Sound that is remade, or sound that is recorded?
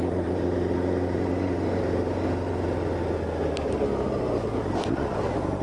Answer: recorded